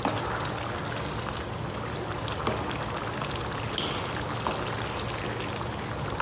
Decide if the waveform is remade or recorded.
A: recorded